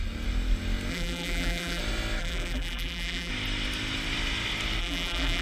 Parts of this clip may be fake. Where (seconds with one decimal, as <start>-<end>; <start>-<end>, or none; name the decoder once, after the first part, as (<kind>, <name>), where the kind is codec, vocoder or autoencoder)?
0.9-1.8 (vocoder, BigVGAN v2); 2.2-3.3; 4.8-5.4